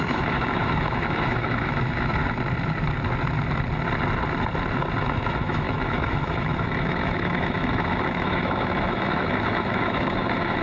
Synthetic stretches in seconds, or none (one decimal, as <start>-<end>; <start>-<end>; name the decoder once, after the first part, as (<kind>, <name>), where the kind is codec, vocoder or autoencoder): 0.0-2.2 (autoencoder, DAC-VAE); 5.0-10.6